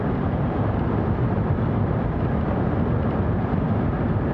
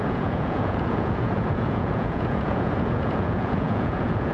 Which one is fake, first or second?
second